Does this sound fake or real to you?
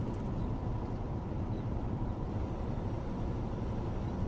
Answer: real